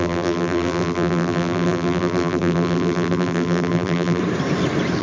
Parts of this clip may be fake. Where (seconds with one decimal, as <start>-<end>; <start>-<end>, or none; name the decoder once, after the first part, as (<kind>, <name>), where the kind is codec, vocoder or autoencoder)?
0.0-4.2 (vocoder, BigVGAN v2)